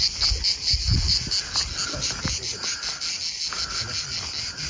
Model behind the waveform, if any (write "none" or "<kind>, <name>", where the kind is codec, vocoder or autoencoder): none